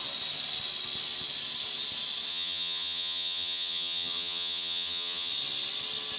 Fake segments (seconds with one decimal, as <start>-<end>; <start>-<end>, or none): 2.3-5.3

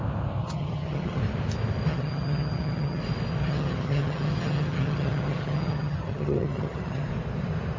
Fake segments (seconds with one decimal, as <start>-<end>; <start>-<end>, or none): 0.4-1.2; 1.9-3.0; 3.4-7.1

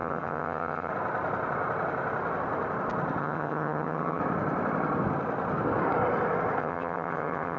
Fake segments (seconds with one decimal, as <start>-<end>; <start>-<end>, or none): 0.0-0.9; 3.2-4.2; 6.6-7.6

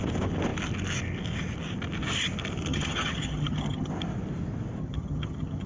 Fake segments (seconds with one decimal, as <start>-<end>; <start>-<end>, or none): 2.7-3.9; 4.8-5.7

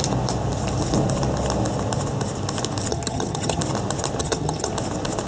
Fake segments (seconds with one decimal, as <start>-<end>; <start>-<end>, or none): 2.9-3.6; 4.2-4.7

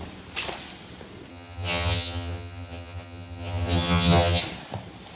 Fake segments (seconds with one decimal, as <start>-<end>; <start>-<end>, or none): 1.3-4.4

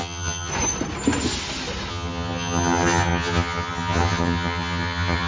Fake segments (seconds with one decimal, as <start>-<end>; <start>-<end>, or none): 0.0-0.5; 1.9-5.3

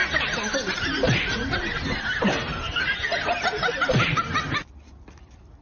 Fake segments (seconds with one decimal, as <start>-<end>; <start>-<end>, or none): none